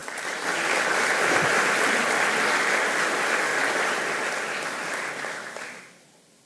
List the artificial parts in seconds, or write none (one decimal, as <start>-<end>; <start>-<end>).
3.5-4.2